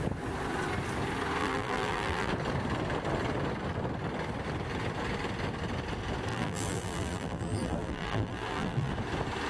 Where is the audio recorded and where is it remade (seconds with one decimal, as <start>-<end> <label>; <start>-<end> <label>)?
0.0-1.4 recorded; 1.4-2.3 remade; 2.3-6.3 recorded; 6.3-8.9 remade; 8.9-9.5 recorded